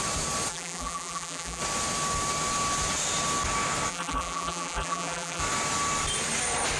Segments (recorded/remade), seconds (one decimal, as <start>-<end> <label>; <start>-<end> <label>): 0.0-0.5 recorded; 0.5-1.6 remade; 1.6-3.9 recorded; 3.9-5.4 remade; 5.4-6.8 recorded